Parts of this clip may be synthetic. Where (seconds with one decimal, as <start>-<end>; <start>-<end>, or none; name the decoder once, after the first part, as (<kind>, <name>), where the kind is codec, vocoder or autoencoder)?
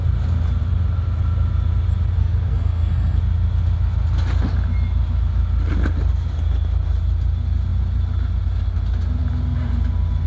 2.2-3.2 (codec, SNAC)